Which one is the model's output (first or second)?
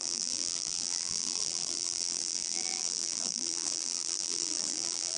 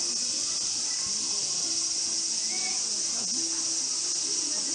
first